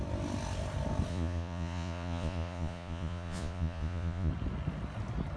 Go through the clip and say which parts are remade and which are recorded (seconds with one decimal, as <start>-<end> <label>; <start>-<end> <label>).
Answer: 0.0-1.1 recorded; 1.1-4.3 remade; 4.3-5.4 recorded